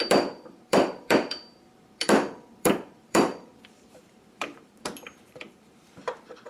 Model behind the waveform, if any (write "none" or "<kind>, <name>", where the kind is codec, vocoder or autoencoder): vocoder, BigVGAN v2